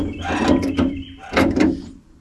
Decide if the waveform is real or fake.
fake